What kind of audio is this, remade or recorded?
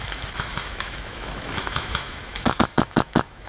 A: remade